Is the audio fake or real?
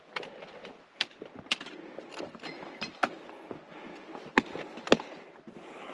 real